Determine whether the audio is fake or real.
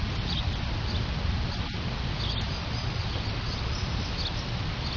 real